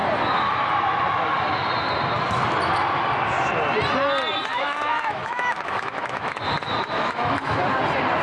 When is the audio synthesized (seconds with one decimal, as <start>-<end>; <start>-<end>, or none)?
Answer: 4.5-7.6